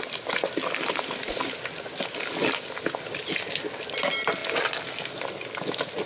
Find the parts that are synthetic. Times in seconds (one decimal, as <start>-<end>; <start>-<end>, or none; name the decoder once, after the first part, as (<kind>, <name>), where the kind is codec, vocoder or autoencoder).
none